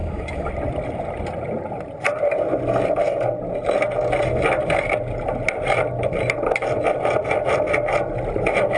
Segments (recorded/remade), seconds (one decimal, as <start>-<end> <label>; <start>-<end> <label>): 0.0-0.5 remade; 0.5-8.8 recorded